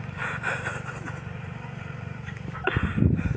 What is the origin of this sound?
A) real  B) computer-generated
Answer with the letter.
A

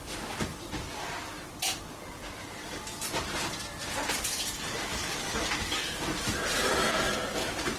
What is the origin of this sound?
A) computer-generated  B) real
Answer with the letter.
A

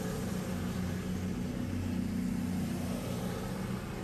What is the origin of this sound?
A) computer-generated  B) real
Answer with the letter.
B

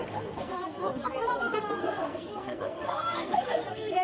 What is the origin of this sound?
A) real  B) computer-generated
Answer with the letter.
B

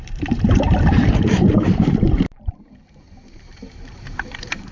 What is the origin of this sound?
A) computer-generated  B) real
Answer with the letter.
A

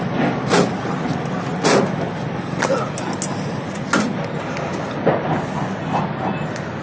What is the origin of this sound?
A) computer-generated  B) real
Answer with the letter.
B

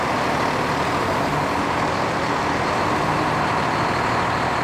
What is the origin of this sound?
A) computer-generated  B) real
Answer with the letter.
B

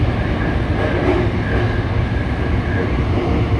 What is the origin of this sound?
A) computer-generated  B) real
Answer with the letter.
B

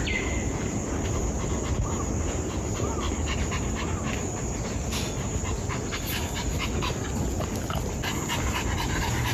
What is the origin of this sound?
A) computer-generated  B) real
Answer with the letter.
B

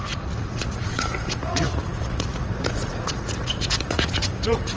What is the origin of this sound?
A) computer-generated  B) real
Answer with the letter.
A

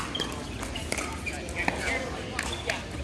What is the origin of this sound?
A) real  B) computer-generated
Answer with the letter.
A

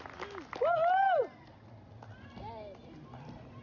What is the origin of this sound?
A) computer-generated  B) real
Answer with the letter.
B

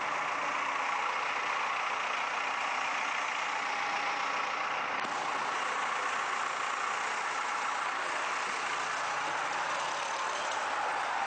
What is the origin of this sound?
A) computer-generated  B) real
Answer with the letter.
B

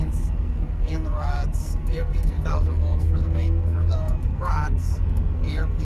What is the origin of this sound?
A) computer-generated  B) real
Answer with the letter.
A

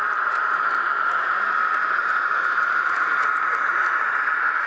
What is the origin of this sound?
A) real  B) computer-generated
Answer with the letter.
B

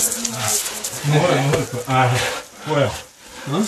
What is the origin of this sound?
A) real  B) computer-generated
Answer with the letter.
A